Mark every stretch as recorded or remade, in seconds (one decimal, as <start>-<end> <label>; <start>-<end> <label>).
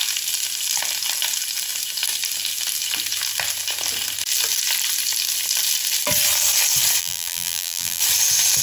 0.0-7.0 recorded; 7.0-8.0 remade; 8.0-8.6 recorded